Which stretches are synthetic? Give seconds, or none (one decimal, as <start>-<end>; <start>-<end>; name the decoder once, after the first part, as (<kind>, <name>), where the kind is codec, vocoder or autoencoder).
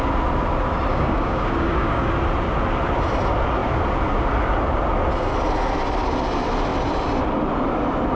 0.9-2.1 (codec, DAC)